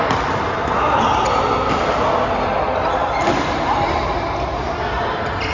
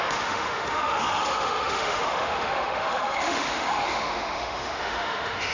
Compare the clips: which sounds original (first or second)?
first